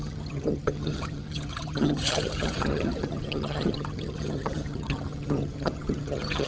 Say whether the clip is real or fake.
fake